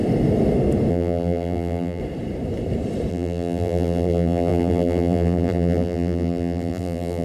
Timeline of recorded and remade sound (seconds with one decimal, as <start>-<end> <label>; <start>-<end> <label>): 0.0-0.9 recorded; 0.9-2.0 remade; 2.0-3.1 recorded; 3.1-7.2 remade